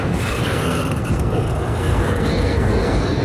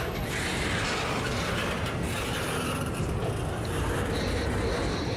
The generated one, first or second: first